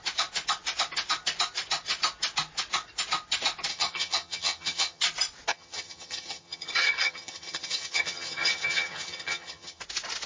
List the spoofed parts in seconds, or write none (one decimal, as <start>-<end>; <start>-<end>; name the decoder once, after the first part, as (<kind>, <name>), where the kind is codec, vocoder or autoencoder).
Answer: 3.7-5.0 (vocoder, HiFi-GAN); 5.5-9.8